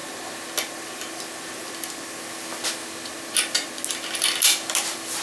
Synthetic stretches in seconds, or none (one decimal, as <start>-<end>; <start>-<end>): none

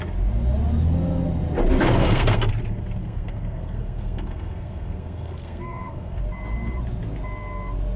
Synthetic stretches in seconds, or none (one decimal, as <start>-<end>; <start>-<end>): 2.0-2.5; 3.0-6.2

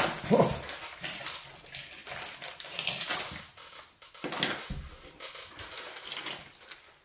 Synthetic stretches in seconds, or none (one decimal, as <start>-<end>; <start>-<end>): none